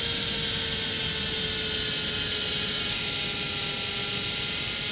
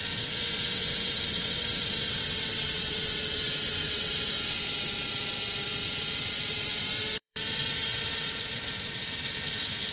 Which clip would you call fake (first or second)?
second